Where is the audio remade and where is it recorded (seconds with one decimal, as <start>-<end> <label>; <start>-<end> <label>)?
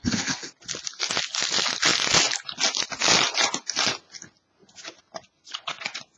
0.0-0.5 remade; 0.5-6.2 recorded